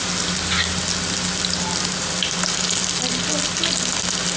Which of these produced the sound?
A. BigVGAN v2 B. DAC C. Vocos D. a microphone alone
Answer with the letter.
D